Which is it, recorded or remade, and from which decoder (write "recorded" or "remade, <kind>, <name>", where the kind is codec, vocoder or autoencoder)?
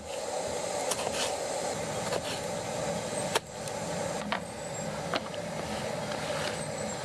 recorded